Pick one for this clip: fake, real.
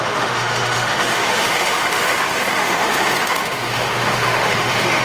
fake